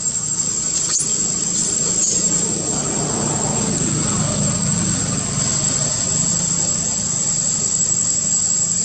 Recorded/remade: recorded